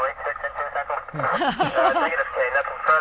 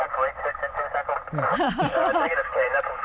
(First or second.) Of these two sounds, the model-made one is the second